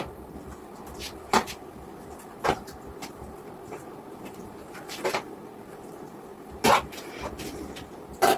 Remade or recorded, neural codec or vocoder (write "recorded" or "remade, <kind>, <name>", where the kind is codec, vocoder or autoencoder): remade, vocoder, BigVGAN v2